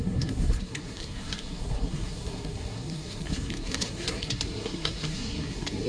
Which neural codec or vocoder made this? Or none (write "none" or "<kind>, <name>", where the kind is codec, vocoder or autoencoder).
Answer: codec, SNAC